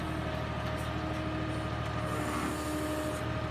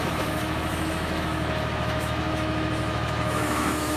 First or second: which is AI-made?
second